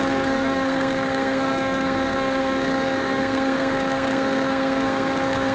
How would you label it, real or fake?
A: fake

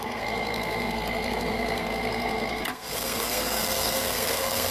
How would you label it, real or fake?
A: fake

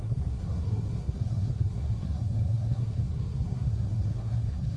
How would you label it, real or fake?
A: fake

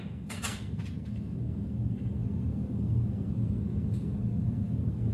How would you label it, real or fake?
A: fake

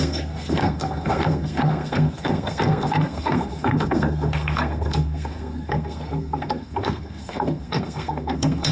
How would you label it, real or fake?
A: fake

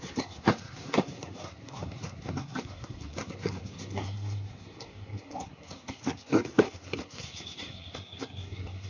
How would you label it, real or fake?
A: fake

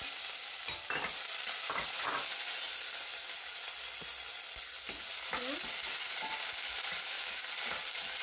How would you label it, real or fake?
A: real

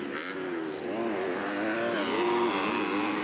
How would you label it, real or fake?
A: real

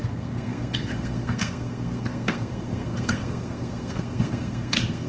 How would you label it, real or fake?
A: fake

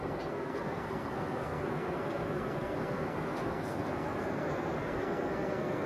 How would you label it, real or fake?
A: fake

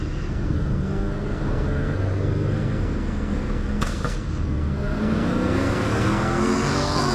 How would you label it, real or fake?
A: fake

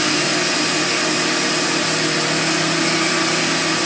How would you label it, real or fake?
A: real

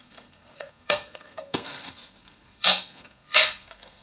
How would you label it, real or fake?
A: fake